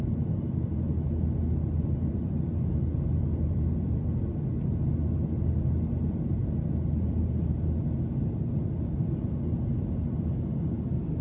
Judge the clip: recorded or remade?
recorded